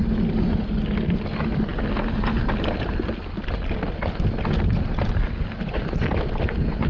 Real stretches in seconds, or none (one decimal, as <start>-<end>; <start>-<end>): 0.0-6.9